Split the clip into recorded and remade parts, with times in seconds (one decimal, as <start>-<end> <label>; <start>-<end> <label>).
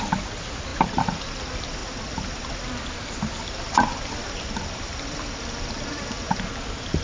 0.0-7.0 recorded